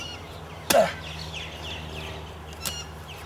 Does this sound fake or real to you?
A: real